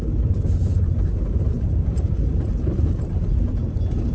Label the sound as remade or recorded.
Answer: remade